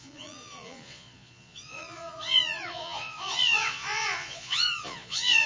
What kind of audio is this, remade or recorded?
remade